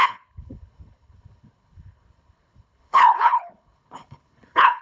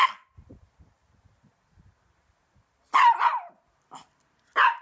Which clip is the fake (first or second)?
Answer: first